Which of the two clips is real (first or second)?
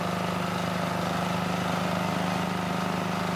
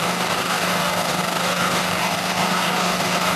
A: first